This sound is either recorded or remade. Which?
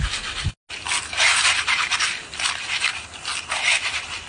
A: recorded